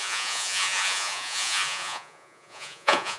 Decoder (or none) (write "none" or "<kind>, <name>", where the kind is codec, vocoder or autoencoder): vocoder, Vocos